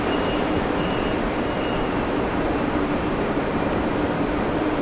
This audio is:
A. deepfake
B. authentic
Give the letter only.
A